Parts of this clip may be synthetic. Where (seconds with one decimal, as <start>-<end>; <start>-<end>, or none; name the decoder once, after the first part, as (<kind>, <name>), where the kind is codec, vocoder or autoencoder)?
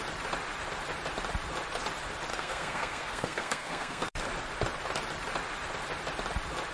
2.3-4.1 (codec, SNAC)